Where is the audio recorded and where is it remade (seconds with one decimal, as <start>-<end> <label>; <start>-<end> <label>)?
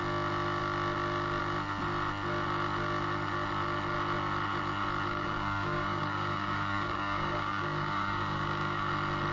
0.0-5.1 recorded; 5.1-8.9 remade; 8.9-9.3 recorded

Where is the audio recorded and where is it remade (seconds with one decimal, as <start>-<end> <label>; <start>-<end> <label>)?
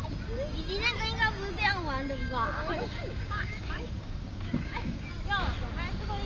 0.0-2.2 recorded; 2.2-5.1 remade; 5.1-6.2 recorded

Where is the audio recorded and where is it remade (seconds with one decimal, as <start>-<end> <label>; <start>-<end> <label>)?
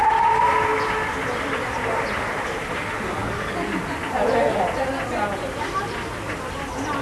0.0-3.2 recorded; 3.2-3.8 remade; 3.8-7.0 recorded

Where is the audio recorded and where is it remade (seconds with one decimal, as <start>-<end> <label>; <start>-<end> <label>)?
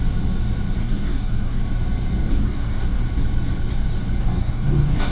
0.0-0.8 recorded; 0.8-1.6 remade; 1.6-2.3 recorded; 2.3-3.0 remade; 3.0-4.2 recorded; 4.2-5.1 remade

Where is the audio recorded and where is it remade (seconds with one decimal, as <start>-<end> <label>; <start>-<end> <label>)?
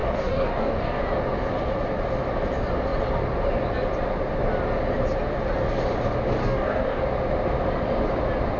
0.0-1.0 remade; 1.0-6.4 recorded; 6.4-7.0 remade; 7.0-8.6 recorded